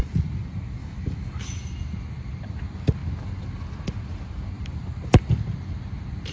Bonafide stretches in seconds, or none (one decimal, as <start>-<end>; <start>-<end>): 0.0-0.8; 1.4-6.3